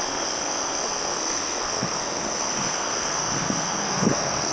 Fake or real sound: fake